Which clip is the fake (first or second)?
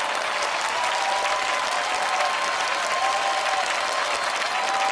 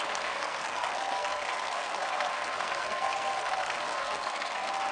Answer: second